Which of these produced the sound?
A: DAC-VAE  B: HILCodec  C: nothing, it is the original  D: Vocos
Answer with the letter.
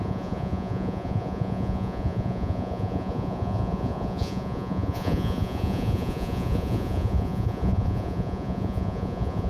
D